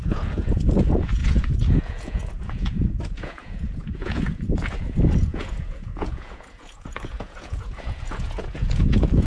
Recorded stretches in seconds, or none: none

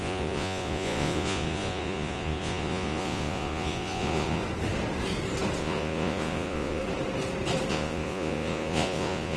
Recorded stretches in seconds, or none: 4.4-5.6; 6.8-7.7

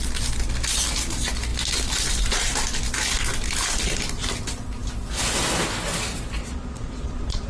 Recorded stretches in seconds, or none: 0.0-6.4

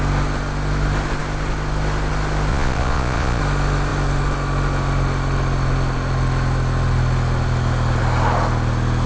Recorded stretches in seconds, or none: 0.0-2.5; 3.4-9.1